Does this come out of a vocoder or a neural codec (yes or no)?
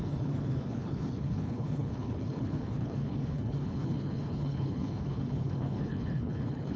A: yes